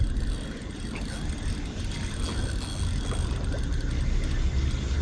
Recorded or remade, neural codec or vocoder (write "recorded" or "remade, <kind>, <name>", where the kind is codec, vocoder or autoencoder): recorded